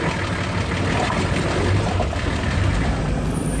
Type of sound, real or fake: real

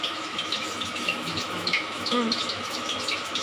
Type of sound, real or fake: fake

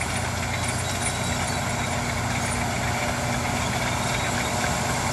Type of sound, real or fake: real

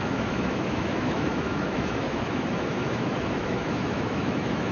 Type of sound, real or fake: fake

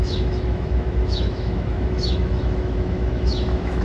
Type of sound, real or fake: fake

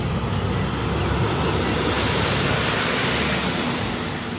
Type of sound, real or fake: real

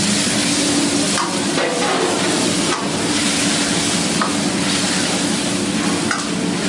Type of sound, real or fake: real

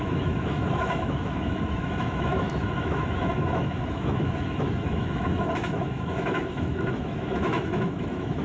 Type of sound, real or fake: fake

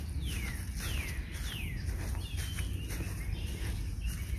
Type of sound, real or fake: real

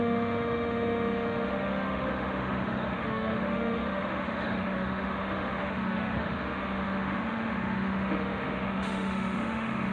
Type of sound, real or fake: fake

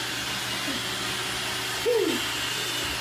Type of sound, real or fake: real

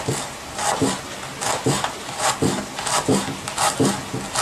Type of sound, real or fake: real